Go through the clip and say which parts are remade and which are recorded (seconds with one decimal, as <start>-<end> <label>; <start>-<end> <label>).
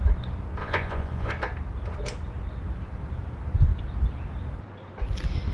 0.0-0.6 recorded; 0.6-1.3 remade; 1.3-5.5 recorded